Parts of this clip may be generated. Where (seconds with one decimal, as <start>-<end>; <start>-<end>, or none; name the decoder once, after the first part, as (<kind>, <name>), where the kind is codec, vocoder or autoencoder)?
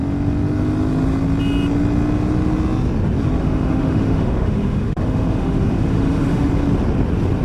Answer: 3.4-6.5 (autoencoder, DAC-VAE)